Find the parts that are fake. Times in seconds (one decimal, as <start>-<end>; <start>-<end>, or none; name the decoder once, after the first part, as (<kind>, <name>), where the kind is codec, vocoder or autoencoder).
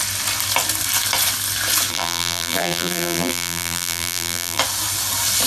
1.9-4.6 (vocoder, BigVGAN v2)